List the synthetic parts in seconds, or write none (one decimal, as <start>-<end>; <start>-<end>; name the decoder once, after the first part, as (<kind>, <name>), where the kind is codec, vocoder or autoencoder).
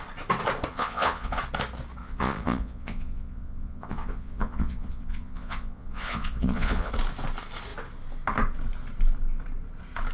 0.7-1.4 (vocoder, Vocos); 2.0-6.9